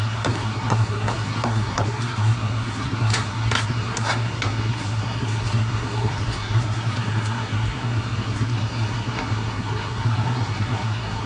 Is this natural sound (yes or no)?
no